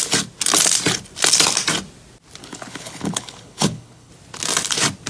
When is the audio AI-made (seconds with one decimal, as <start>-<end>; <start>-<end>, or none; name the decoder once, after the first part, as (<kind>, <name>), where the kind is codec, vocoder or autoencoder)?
2.4-4.1 (codec, HILCodec)